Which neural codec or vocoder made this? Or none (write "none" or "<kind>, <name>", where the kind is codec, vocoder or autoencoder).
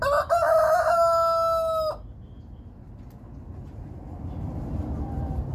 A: none